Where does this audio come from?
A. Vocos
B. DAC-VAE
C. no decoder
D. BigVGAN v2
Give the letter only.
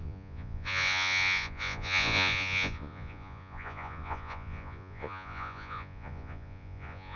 A